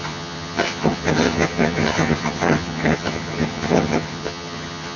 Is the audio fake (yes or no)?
yes